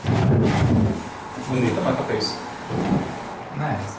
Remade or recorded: recorded